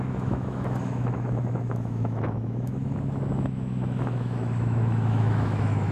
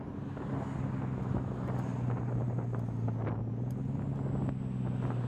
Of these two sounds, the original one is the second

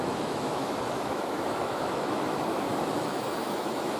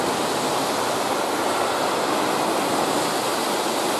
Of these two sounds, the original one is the second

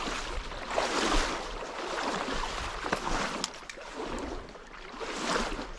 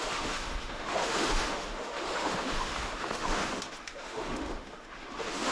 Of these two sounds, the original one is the first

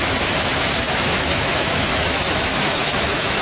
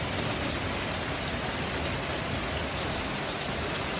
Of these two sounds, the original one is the second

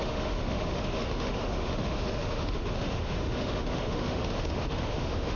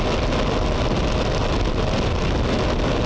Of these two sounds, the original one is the second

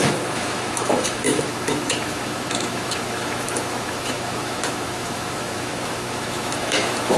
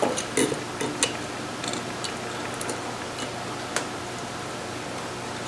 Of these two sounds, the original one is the second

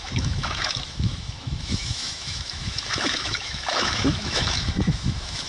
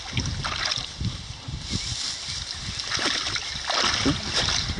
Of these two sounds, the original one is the second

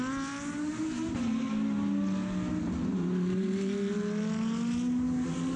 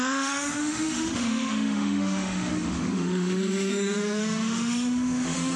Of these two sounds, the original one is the first